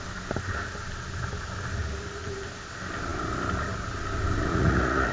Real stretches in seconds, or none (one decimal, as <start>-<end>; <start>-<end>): 0.0-4.5

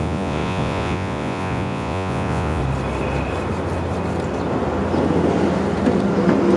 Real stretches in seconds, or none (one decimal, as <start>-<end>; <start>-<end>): 2.6-6.6

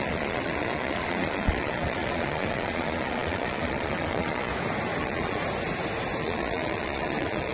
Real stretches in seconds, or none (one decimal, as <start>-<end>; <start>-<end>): 4.5-5.0; 5.4-6.2

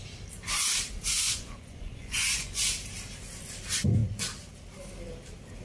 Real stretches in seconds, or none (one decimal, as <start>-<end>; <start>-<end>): 0.0-1.1; 2.6-5.6